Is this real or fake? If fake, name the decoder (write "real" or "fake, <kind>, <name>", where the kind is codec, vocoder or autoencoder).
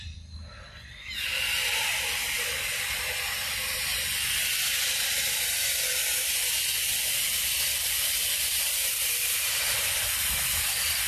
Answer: fake, vocoder, BigVGAN v2